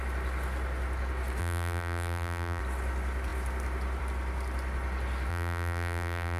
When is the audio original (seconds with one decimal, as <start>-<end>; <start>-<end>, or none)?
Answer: 0.0-1.4; 2.6-5.3